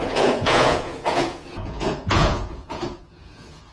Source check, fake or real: fake